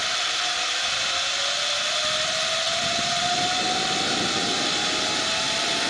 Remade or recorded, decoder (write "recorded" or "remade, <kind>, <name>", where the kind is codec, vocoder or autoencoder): recorded